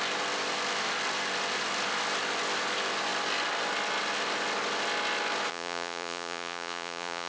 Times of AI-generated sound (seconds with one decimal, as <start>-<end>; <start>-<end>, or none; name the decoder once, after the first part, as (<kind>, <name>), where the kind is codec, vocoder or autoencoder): 5.5-7.3 (vocoder, Vocos)